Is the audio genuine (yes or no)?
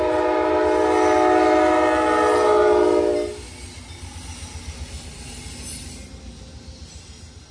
yes